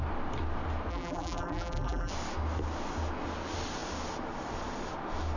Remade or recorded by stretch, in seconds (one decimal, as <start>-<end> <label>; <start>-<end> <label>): 0.0-0.9 recorded; 0.9-2.1 remade; 2.1-5.4 recorded